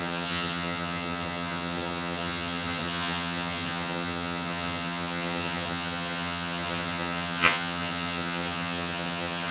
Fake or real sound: fake